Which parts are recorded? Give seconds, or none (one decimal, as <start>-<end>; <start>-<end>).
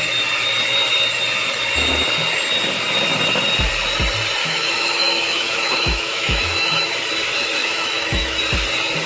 0.0-4.4; 6.9-7.6; 8.4-9.1